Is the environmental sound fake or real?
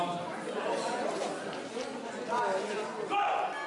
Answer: real